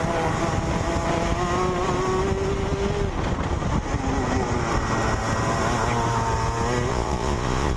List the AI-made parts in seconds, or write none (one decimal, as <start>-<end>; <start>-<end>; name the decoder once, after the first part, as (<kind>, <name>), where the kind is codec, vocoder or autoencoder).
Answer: 6.9-7.8 (vocoder, Vocos)